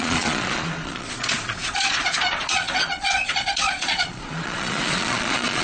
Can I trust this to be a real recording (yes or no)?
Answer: no